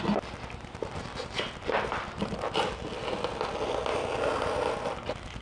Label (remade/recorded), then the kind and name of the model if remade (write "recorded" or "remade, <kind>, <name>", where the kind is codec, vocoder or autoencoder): recorded